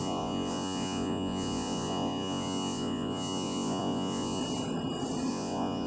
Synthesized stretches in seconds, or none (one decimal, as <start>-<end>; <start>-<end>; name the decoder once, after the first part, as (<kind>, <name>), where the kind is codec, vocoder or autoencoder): 0.0-4.4 (vocoder, Vocos); 5.3-5.9